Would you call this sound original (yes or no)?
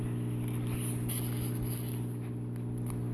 yes